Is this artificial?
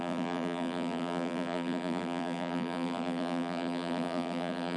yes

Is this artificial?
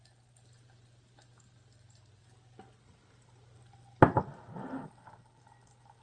no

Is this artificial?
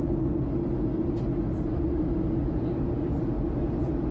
no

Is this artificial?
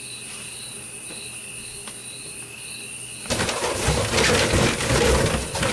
no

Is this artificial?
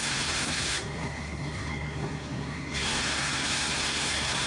yes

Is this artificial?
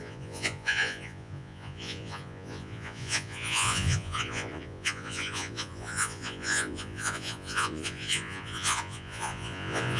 yes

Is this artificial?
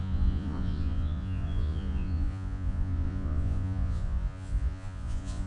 yes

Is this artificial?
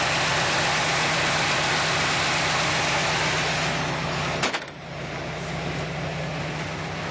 no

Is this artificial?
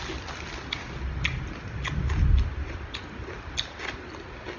no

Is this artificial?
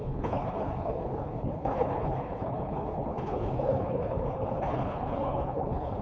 yes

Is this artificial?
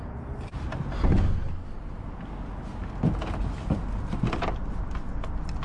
no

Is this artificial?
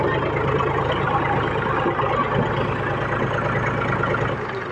no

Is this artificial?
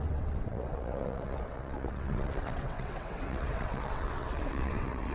yes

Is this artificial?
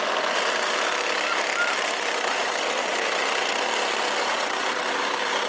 no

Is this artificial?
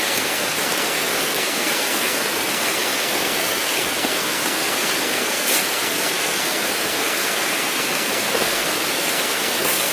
yes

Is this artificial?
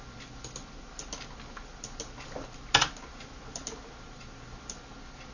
no